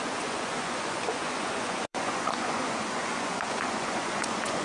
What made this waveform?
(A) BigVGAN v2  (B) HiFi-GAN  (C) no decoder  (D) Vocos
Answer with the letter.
D